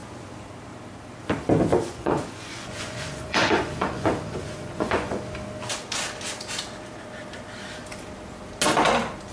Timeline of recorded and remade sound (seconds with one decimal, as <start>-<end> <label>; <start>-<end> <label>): 0.0-1.7 recorded; 1.7-5.2 remade; 5.2-9.3 recorded